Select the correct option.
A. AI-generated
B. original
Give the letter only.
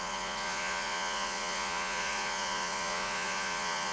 A